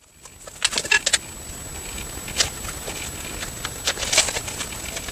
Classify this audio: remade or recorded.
recorded